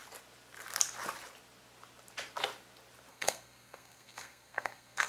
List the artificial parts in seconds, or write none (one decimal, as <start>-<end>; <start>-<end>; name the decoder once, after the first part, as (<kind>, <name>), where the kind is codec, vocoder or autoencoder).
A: 3.1-5.1 (codec, SNAC)